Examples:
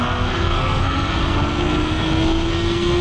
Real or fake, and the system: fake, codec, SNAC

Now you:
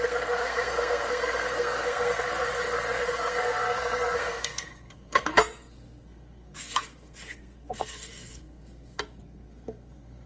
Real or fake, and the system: fake, codec, SNAC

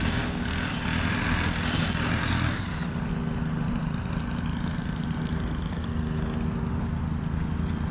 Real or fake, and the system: real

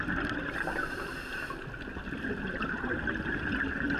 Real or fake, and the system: real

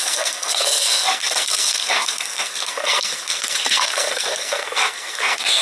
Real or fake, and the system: fake, codec, SNAC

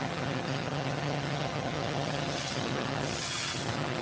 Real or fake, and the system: fake, vocoder, HiFi-GAN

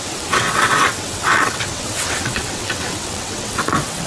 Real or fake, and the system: fake, vocoder, WaveNeXt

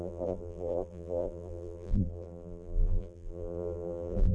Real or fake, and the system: fake, vocoder, BigVGAN v2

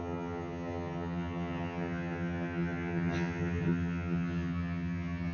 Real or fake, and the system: fake, vocoder, HiFi-GAN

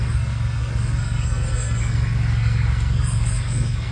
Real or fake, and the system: fake, codec, SNAC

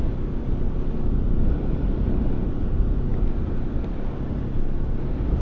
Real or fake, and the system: real